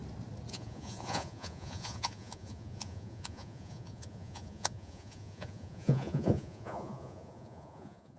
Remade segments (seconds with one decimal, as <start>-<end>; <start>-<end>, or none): 0.5-8.2